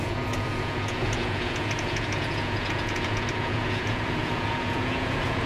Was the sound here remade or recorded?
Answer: remade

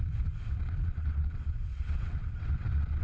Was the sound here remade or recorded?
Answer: remade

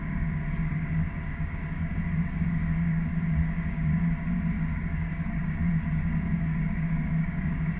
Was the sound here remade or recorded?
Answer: remade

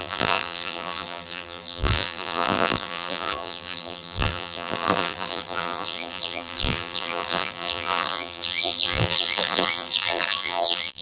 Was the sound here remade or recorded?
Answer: remade